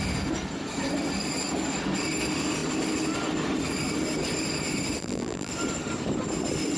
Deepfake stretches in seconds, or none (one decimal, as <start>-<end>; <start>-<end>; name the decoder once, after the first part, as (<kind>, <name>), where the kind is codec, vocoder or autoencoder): 5.0-5.5 (vocoder, BigVGAN v2)